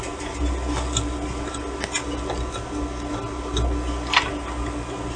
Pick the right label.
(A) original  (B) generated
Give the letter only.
A